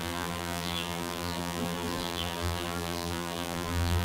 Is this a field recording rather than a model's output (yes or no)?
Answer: no